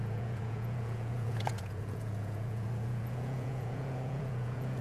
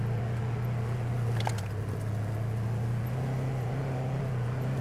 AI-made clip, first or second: first